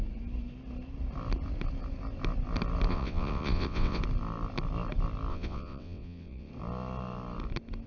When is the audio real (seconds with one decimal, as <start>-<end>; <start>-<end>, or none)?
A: 0.0-2.9; 4.0-5.3; 6.5-7.9